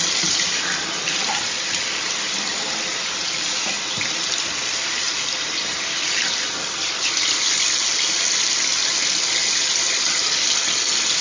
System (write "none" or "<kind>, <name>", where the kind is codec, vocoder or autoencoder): none